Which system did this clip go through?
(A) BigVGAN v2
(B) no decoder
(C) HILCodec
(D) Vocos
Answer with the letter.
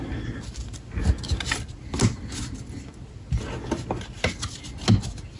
B